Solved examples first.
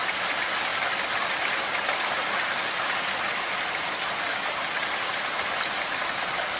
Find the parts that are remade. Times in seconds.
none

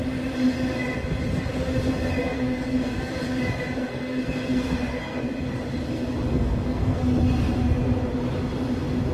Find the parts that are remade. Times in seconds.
2.2-3.1 (codec, SNAC); 3.8-5.2; 6.3-7.0

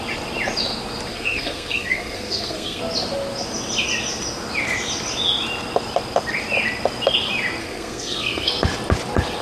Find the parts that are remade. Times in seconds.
1.1-2.8 (codec, SNAC); 7.6-8.5